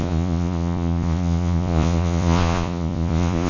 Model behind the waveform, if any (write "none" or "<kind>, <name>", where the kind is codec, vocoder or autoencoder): vocoder, Vocos